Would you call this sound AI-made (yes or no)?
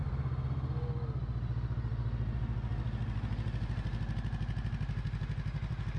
no